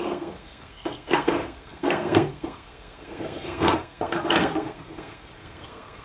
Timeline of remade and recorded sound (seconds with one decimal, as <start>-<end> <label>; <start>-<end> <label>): 0.0-6.0 remade